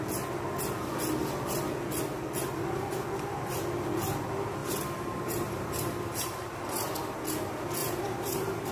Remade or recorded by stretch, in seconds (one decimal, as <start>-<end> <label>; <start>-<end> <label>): 0.0-4.6 recorded; 4.6-6.5 remade; 6.5-7.8 recorded; 7.8-8.7 remade